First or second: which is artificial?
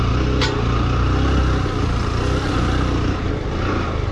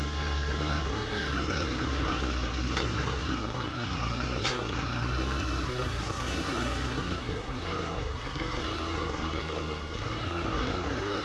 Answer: second